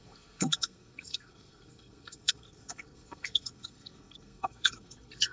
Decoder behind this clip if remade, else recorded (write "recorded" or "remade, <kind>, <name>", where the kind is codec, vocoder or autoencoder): remade, codec, SNAC